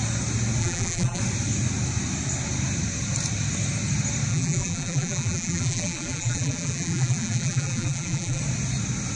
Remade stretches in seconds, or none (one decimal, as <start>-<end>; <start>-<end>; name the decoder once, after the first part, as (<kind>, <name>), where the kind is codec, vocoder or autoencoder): 0.6-1.2 (vocoder, BigVGAN v2); 4.3-8.4